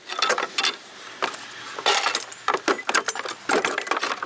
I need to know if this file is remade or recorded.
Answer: recorded